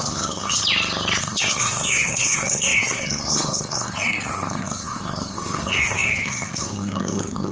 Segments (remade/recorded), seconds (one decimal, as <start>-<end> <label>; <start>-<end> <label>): 0.0-0.6 remade; 0.6-1.2 recorded; 1.2-7.5 remade